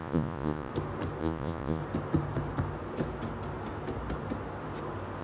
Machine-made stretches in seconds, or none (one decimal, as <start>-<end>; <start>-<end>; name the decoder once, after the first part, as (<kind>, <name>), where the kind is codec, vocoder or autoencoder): 0.0-0.7 (vocoder, Vocos); 1.2-1.8